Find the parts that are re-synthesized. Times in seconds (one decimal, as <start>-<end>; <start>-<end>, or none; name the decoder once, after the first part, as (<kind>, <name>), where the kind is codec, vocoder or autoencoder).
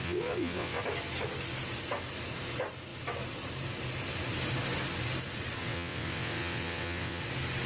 0.0-0.8 (vocoder, WaveNeXt); 5.6-7.2